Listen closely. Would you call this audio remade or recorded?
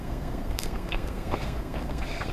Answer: remade